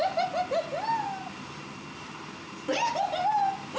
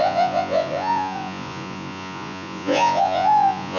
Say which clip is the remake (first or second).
second